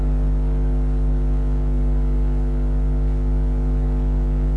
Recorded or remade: remade